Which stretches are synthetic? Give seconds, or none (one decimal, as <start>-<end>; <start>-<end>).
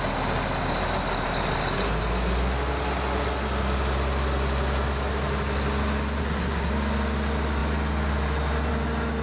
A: 6.2-6.7